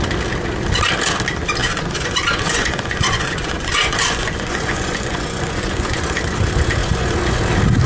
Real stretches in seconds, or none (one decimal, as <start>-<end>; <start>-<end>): 0.0-1.6; 6.2-6.8; 7.4-7.9